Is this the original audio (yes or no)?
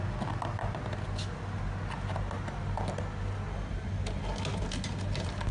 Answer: yes